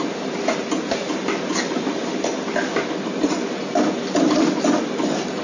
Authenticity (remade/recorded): recorded